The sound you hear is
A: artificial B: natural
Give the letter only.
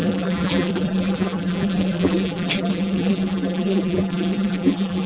A